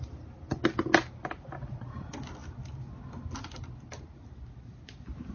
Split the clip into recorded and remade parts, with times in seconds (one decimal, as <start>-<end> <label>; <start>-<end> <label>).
0.0-5.3 recorded